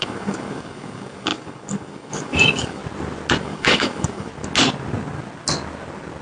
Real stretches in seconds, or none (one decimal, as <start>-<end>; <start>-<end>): 2.8-3.4; 4.3-6.2